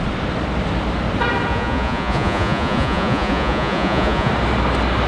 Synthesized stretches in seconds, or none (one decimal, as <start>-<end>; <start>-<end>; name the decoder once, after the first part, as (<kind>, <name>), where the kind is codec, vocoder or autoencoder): 1.5-4.3 (vocoder, Vocos)